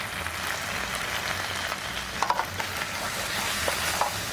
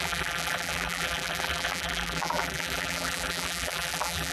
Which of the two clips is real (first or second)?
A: first